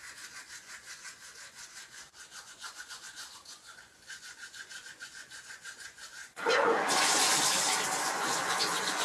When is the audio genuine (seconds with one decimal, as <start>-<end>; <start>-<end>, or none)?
7.3-8.0

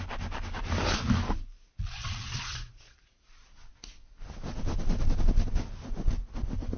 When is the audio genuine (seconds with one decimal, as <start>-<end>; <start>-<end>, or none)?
0.0-1.8; 3.7-6.8

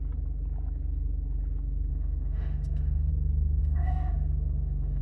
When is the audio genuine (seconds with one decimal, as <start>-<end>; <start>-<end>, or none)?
0.0-1.9; 3.1-3.6